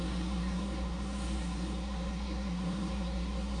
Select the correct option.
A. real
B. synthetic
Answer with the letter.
B